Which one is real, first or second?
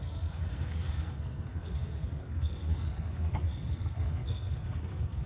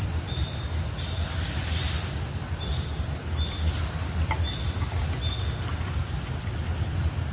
second